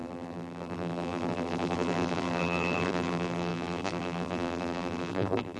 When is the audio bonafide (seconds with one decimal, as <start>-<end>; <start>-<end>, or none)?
none